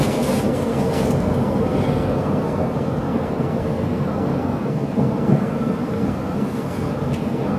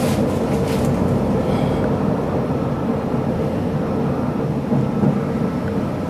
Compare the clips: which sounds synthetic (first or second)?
first